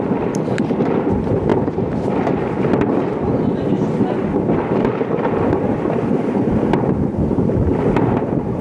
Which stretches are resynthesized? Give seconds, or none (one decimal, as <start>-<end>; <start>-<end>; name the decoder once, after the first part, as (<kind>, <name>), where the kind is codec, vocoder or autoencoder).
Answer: none